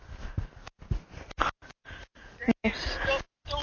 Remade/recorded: recorded